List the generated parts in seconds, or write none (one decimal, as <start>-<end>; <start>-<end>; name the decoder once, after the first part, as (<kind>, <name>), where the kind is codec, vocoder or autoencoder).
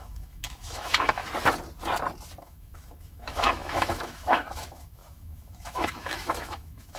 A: 0.0-1.2 (autoencoder, DAC-VAE); 2.4-7.0